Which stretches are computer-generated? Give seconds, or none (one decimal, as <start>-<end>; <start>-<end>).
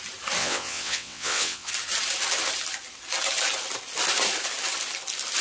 0.4-1.7